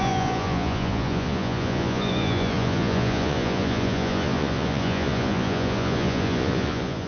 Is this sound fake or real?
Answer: fake